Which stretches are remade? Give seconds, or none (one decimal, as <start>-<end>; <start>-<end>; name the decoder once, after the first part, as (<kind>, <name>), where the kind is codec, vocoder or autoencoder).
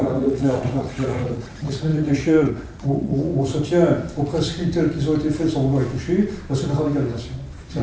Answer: 0.0-3.3 (vocoder, Vocos)